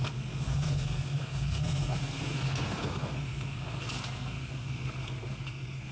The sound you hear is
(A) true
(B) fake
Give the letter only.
B